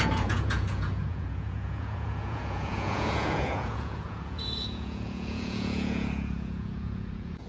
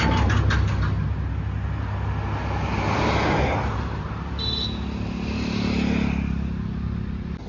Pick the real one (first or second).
second